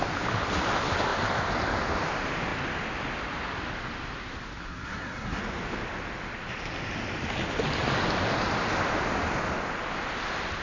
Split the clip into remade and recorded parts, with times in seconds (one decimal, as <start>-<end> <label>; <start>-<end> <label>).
0.0-4.6 recorded; 4.6-5.4 remade; 5.4-10.6 recorded